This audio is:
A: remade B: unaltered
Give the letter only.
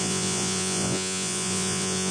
A